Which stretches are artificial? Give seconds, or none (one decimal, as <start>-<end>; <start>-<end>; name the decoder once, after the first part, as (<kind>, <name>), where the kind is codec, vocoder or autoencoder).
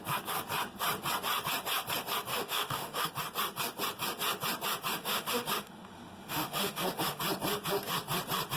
2.3-3.1 (autoencoder, DAC-VAE); 5.0-7.2